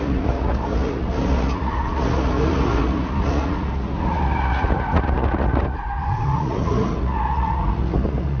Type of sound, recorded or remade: remade